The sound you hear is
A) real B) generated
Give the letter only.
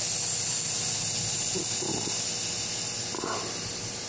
A